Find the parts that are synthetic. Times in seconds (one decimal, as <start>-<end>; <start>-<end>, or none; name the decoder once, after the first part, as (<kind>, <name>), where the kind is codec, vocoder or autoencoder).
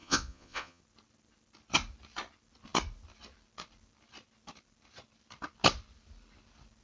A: 0.0-0.8 (vocoder, Vocos)